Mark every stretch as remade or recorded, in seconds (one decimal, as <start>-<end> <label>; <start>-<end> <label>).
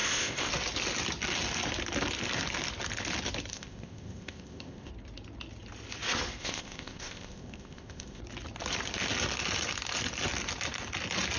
0.0-0.5 remade; 0.5-3.5 recorded; 3.5-4.9 remade; 4.9-6.4 recorded; 6.4-8.2 remade; 8.2-11.4 recorded